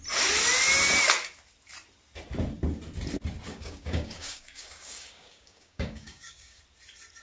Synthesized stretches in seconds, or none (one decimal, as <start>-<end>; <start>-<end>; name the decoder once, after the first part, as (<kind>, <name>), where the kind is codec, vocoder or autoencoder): 3.5-6.6 (codec, DAC)